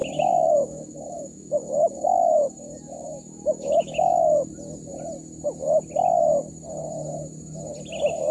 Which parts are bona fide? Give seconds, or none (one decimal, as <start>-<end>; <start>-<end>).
4.5-8.3